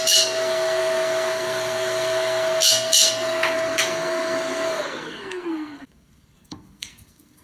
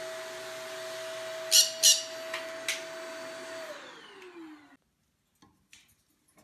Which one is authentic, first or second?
second